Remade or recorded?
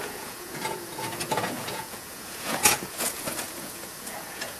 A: remade